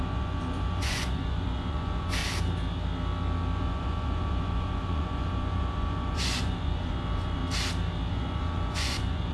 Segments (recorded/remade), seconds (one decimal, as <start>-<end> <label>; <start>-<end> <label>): 0.0-2.2 remade; 2.2-3.6 recorded; 3.6-7.4 remade; 7.4-8.1 recorded; 8.1-9.3 remade